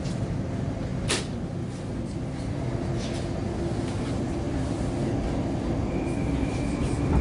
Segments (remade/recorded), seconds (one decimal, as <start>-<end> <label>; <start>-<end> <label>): 0.0-7.2 recorded